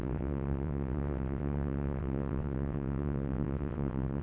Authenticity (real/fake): fake